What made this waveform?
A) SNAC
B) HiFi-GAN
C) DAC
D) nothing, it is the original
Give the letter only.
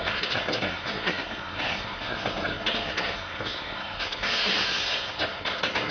A